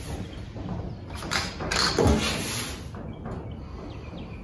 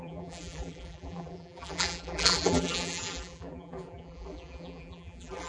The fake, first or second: second